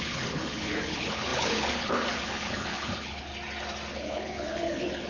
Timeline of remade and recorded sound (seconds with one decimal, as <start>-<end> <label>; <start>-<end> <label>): 0.0-3.3 remade; 3.3-3.9 recorded; 3.9-5.1 remade